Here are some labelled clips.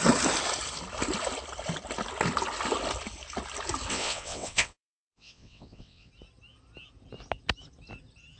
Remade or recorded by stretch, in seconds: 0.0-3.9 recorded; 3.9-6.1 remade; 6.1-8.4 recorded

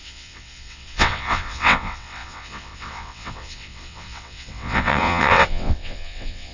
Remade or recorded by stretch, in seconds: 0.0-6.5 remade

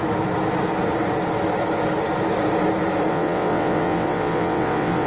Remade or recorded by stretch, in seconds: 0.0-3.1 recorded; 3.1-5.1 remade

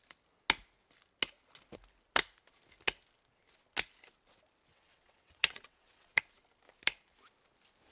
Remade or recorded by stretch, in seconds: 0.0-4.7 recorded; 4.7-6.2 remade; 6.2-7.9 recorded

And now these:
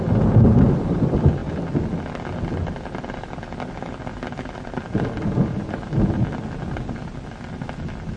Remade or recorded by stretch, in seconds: 0.0-8.2 recorded